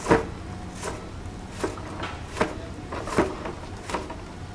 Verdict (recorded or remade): recorded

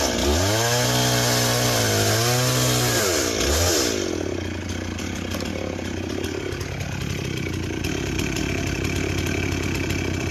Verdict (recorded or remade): recorded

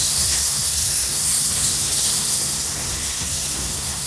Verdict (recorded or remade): remade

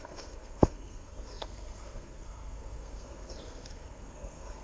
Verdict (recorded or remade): remade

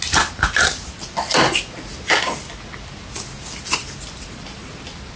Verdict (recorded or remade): recorded